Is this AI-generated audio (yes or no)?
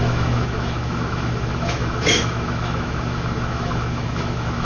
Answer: yes